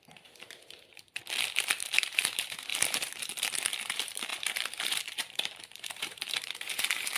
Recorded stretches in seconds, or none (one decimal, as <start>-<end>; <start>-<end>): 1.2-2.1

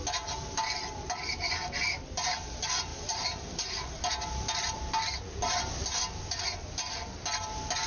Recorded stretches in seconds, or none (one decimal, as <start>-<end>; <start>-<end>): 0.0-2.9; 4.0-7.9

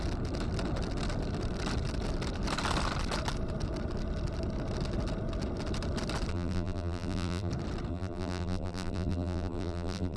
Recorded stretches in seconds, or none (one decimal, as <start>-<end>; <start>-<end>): 0.0-6.3; 7.5-7.9